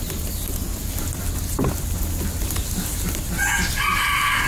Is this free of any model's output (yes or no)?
yes